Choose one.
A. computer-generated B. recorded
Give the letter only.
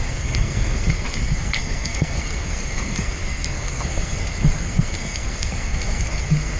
A